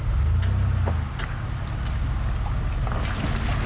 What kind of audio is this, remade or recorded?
recorded